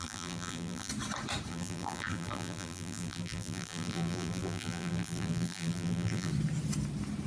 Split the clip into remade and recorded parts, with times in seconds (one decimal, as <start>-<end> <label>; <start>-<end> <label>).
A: 0.0-0.9 remade; 0.9-1.5 recorded; 1.5-6.3 remade; 6.3-7.3 recorded